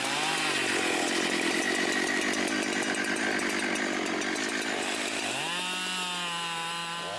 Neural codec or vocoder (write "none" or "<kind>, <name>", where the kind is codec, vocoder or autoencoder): none